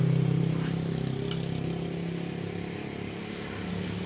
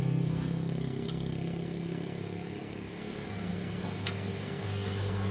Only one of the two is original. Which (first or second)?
first